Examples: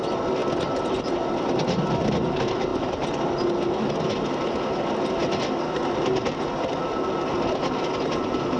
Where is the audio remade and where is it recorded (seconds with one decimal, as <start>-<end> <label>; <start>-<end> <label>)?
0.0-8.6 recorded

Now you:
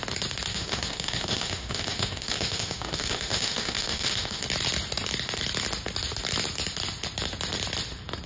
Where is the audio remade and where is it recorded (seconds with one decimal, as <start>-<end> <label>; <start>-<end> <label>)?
0.0-0.5 recorded; 0.5-4.4 remade; 4.4-8.3 recorded

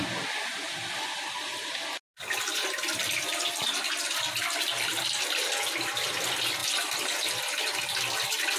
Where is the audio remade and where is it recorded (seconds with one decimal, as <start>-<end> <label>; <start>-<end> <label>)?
0.0-8.6 recorded

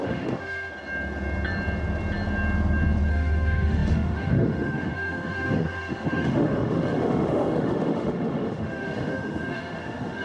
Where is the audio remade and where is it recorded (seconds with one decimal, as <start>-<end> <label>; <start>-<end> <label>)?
0.0-0.7 remade; 0.7-3.1 recorded; 3.1-10.2 remade

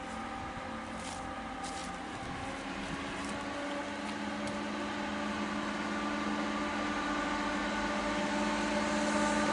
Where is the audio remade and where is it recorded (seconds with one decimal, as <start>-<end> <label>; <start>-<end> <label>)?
0.0-9.5 recorded